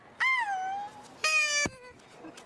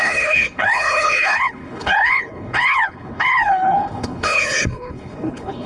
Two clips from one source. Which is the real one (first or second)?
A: first